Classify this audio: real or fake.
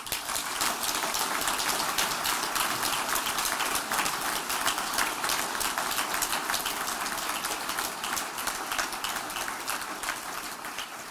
real